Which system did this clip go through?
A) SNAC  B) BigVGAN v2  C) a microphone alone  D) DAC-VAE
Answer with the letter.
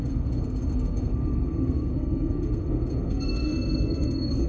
A